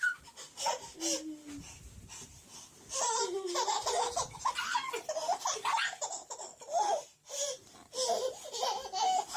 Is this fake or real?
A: real